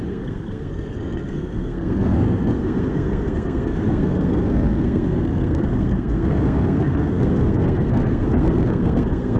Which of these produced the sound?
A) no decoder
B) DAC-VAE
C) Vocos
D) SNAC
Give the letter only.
D